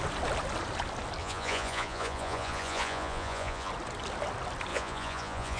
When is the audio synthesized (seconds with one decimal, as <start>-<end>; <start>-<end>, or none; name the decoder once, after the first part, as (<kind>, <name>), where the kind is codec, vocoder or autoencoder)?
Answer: 1.2-3.7 (vocoder, Vocos); 4.7-5.6